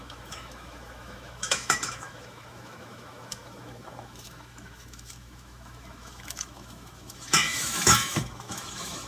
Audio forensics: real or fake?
fake